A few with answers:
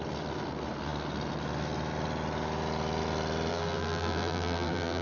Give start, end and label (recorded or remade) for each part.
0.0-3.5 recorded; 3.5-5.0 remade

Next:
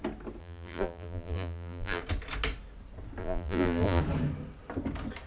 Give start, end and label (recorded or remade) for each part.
0.0-0.4 recorded; 0.4-2.0 remade; 2.0-3.2 recorded; 3.2-4.0 remade; 4.0-5.3 recorded

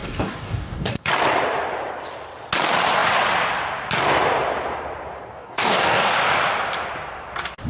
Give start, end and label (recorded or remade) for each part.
0.0-1.1 remade; 1.1-5.3 recorded; 5.3-6.1 remade; 6.1-7.7 recorded

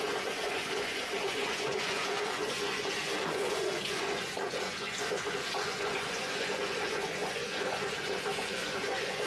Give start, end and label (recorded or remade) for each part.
0.0-9.3 remade

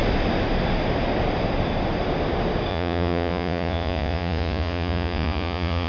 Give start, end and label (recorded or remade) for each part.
0.0-2.7 recorded; 2.7-5.9 remade